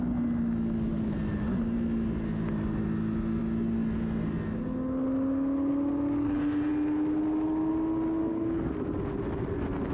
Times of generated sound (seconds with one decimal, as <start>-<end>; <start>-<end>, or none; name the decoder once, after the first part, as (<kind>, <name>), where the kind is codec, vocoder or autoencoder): 8.2-8.7 (codec, SNAC)